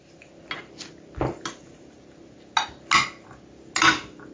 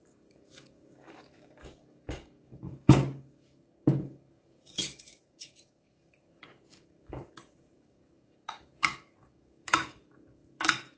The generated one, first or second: second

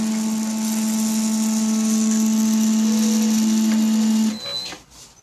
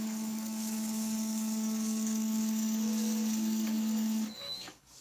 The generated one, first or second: second